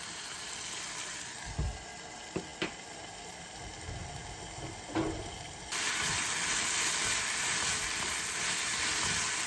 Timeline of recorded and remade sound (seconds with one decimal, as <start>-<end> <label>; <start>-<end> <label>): 0.0-9.5 recorded

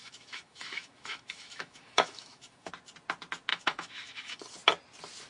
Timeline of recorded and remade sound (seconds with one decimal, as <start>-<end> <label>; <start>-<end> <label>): 0.0-2.7 remade; 2.7-3.5 recorded; 3.5-4.4 remade; 4.4-5.3 recorded

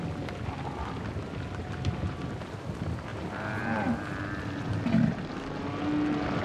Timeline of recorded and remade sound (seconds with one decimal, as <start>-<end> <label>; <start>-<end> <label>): 0.0-3.1 recorded; 3.1-4.2 remade; 4.2-6.4 recorded

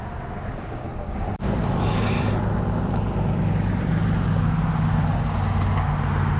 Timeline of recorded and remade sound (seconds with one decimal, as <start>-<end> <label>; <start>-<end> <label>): 0.0-0.9 recorded; 0.9-1.6 remade; 1.6-6.4 recorded

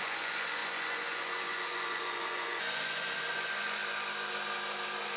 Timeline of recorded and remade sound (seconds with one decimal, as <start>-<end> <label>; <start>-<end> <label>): 0.0-3.8 remade; 3.8-5.2 recorded

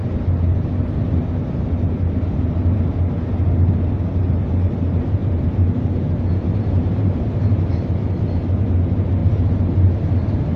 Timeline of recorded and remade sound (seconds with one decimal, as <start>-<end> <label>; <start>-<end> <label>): 0.0-5.2 recorded; 5.2-7.6 remade; 7.6-9.2 recorded; 9.2-9.9 remade; 9.9-10.6 recorded